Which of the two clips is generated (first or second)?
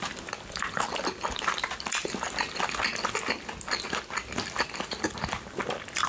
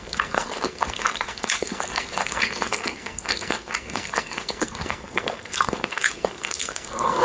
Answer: second